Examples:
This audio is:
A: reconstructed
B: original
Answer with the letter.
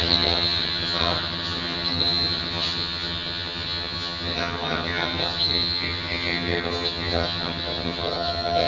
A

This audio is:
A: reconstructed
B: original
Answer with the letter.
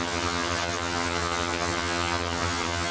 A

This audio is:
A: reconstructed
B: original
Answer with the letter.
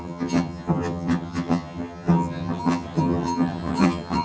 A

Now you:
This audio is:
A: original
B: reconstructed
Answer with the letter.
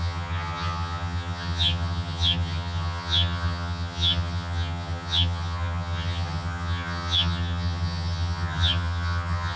B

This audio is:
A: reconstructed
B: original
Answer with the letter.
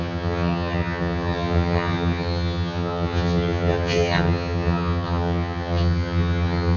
A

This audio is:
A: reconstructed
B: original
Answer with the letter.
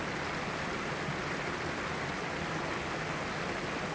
B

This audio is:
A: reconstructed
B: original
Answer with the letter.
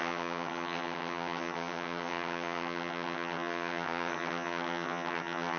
A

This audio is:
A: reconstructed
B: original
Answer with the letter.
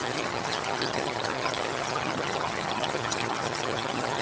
A